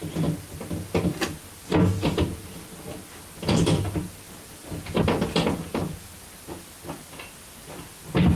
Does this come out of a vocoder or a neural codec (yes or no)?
no